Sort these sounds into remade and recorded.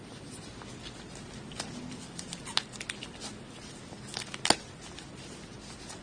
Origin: recorded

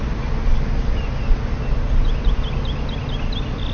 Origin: recorded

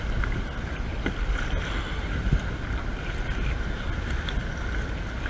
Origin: recorded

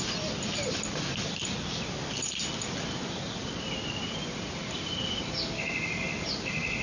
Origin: recorded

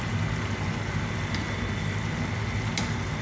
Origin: recorded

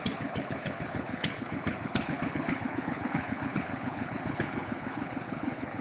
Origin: remade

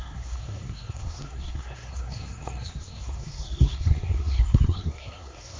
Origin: remade